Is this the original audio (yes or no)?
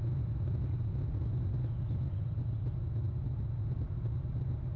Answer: yes